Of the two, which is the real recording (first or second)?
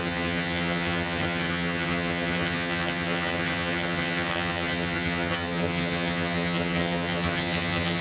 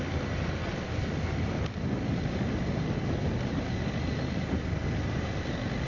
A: second